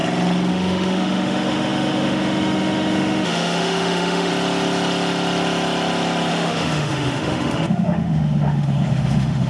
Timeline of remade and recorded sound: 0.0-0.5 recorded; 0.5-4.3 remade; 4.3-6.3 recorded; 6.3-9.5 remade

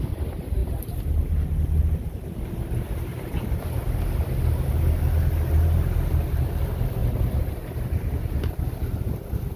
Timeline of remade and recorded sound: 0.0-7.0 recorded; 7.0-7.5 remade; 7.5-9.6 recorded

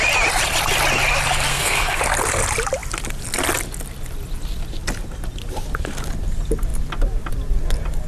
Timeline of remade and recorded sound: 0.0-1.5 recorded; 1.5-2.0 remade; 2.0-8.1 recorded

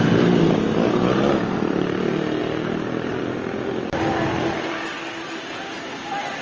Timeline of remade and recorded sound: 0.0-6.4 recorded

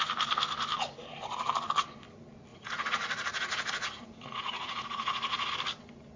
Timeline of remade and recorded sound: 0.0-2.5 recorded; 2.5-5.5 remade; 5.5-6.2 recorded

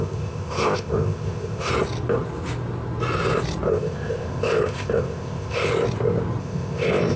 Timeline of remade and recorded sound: 0.0-1.7 remade; 1.7-3.7 recorded; 3.7-5.7 remade; 5.7-6.4 recorded; 6.4-7.2 remade